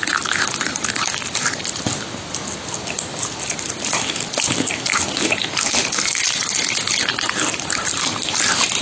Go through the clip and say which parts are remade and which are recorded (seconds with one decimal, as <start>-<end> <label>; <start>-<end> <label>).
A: 0.0-8.8 recorded